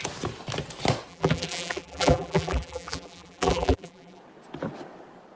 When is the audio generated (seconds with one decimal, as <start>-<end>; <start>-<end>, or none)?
1.1-4.2